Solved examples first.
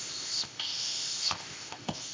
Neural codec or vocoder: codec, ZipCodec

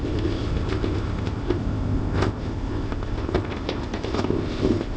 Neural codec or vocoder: codec, ZipCodec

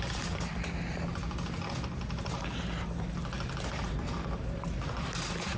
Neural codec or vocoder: none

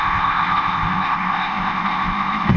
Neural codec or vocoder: codec, ZipCodec